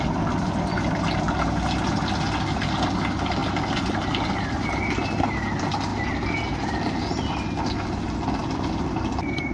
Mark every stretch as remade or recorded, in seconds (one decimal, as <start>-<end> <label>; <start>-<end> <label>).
0.0-8.4 recorded; 8.4-9.1 remade; 9.1-9.5 recorded